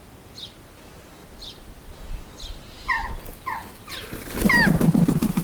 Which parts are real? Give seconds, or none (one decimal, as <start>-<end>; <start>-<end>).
0.0-0.6; 1.2-4.4